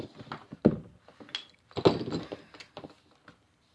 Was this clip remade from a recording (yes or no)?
no